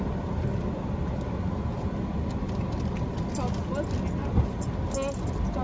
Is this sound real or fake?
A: real